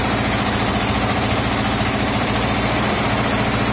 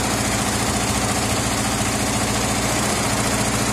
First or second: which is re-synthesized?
first